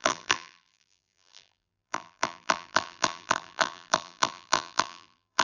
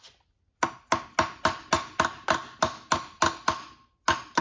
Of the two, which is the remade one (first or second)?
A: first